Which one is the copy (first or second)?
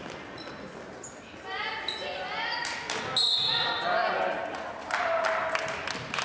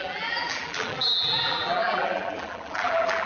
second